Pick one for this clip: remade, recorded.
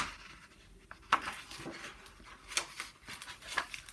recorded